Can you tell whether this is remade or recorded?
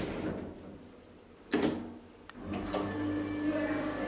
recorded